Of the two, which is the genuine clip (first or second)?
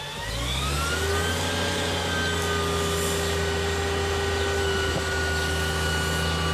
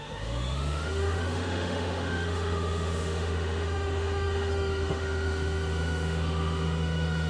first